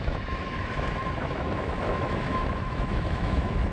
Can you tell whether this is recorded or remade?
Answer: remade